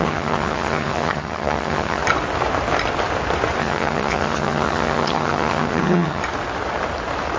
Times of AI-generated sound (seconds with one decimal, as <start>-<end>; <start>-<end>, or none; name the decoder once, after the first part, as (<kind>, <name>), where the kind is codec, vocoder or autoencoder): 0.0-2.0 (vocoder, HiFi-GAN); 3.6-6.2